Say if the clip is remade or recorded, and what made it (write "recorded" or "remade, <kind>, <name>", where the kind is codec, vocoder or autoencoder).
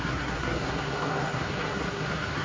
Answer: remade, codec, SNAC